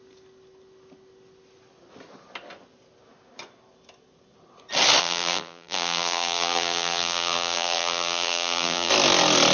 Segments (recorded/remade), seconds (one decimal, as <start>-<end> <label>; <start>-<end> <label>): 0.0-5.0 recorded; 5.0-8.9 remade; 8.9-9.5 recorded